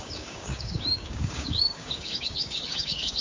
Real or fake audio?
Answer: fake